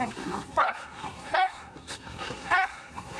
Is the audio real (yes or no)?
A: no